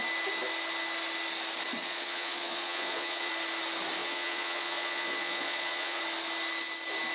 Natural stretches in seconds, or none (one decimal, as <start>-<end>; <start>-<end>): 0.0-1.8; 3.3-4.0; 6.0-7.1